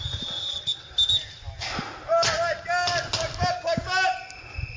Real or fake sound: real